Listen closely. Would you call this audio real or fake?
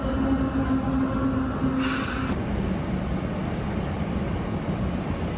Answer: real